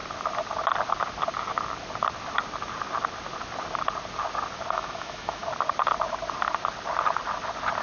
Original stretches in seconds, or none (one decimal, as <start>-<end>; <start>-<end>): 0.0-4.7; 5.4-7.8